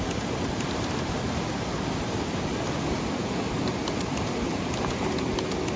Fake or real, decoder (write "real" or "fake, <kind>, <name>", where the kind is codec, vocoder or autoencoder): real